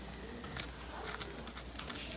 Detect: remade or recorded recorded